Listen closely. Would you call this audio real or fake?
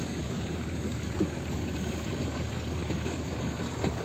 fake